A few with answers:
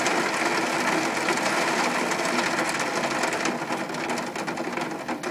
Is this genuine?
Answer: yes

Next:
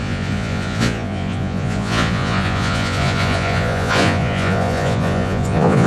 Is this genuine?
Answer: no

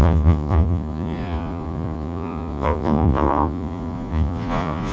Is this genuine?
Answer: no